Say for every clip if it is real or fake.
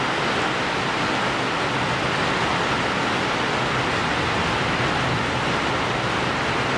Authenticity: real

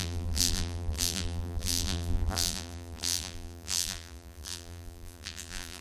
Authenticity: fake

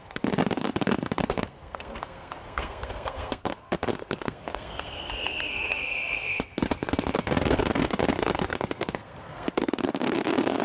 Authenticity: fake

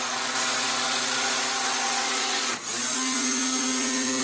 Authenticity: fake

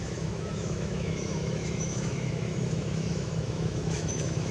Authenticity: fake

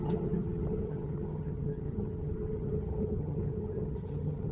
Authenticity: fake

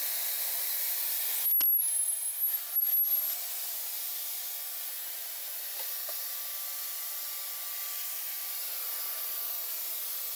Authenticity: real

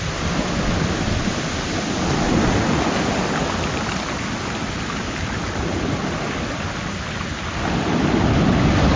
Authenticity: real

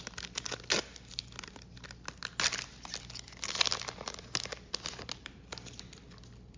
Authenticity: real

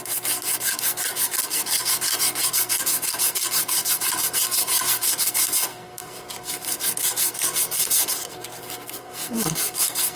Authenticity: fake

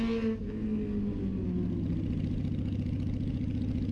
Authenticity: real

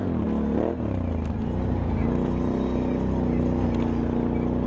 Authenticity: real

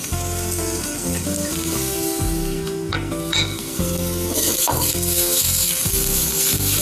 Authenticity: fake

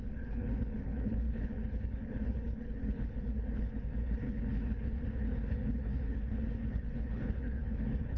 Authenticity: fake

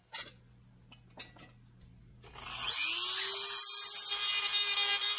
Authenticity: real